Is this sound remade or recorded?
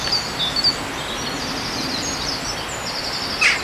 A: recorded